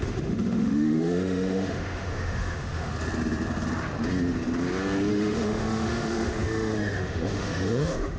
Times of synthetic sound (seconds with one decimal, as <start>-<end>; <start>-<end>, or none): 0.0-2.9; 5.1-8.2